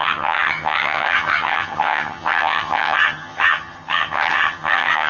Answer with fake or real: fake